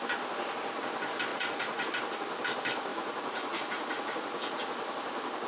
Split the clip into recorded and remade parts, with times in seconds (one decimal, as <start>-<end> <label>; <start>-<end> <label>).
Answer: 0.0-1.3 recorded; 1.3-1.9 remade; 1.9-2.9 recorded; 2.9-4.6 remade; 4.6-5.5 recorded

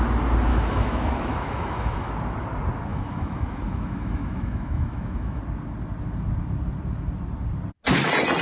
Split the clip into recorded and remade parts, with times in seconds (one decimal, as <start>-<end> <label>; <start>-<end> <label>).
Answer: 0.0-0.5 recorded; 0.5-2.1 remade; 2.1-2.9 recorded; 2.9-5.4 remade; 5.4-8.4 recorded

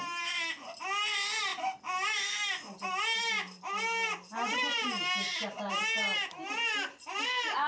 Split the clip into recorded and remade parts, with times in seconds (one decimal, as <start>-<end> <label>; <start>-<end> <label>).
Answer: 0.0-7.7 recorded